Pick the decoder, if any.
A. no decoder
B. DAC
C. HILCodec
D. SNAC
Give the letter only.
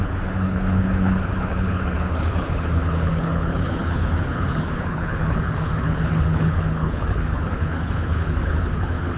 C